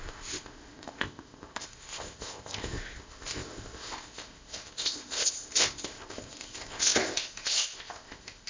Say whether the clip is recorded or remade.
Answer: remade